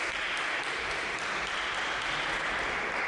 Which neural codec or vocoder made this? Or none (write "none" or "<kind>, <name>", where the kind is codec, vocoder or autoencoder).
none